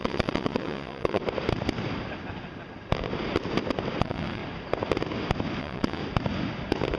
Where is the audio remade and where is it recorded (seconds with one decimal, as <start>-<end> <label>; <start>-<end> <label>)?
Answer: 0.0-1.2 remade; 1.2-4.0 recorded; 4.0-4.4 remade; 4.4-5.6 recorded; 5.6-6.0 remade; 6.0-7.0 recorded